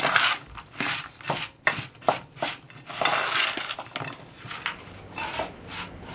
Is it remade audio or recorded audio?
recorded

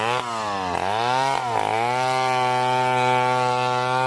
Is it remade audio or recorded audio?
recorded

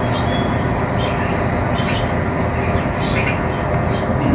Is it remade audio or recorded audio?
recorded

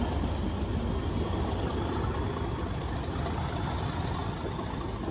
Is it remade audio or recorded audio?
recorded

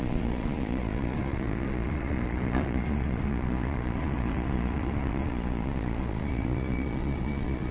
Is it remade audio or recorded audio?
remade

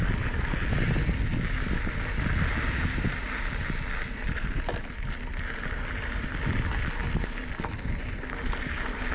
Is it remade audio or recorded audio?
recorded